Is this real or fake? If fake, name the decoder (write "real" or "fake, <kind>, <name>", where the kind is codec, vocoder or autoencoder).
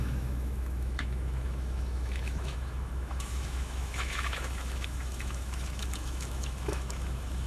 fake, autoencoder, DAC-VAE